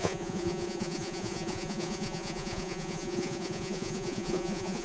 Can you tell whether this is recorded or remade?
remade